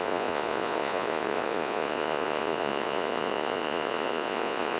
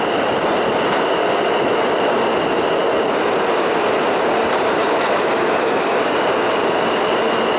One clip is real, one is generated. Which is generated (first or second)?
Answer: first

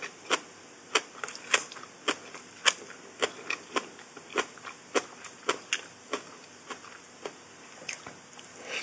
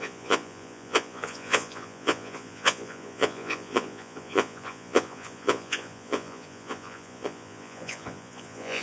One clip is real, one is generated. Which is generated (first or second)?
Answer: second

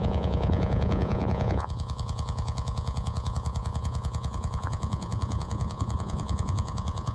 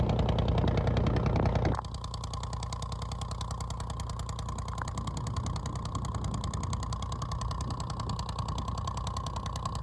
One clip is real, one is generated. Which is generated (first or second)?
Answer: first